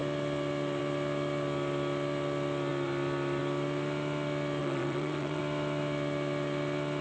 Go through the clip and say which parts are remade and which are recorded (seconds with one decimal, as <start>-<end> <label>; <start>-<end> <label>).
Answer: 0.0-4.6 recorded; 4.6-5.4 remade; 5.4-7.0 recorded

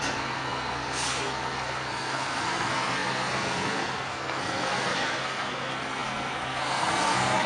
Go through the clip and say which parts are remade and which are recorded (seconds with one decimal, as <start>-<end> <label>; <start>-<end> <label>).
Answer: 0.0-7.5 remade

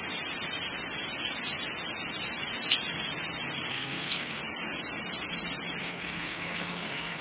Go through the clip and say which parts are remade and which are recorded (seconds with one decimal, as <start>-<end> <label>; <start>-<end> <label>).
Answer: 0.0-3.7 recorded; 3.7-4.4 remade; 4.4-5.8 recorded; 5.8-7.2 remade

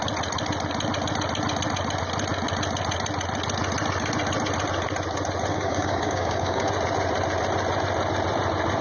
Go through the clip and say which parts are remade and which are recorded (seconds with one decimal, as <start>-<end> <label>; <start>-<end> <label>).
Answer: 0.0-5.5 recorded; 5.5-6.7 remade; 6.7-8.8 recorded

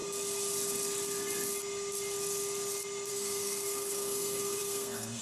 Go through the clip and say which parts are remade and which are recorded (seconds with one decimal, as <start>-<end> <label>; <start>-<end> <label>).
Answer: 0.0-3.1 recorded; 3.1-5.2 remade

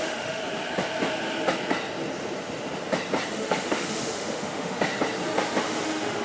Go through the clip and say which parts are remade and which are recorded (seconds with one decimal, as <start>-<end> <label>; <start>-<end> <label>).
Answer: 0.0-0.4 remade; 0.4-3.3 recorded; 3.3-4.9 remade; 4.9-5.6 recorded; 5.6-6.2 remade

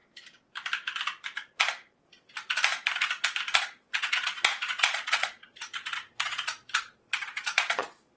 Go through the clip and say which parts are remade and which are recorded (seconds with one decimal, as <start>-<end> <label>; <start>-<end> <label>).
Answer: 0.0-3.6 recorded; 3.6-8.2 remade